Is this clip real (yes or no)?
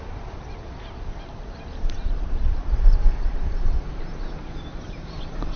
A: no